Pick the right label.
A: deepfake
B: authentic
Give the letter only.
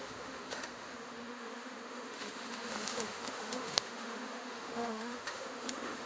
A